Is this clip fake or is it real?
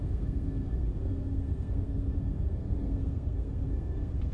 fake